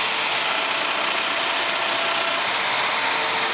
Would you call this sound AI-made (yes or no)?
no